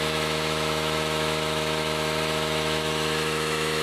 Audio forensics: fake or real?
fake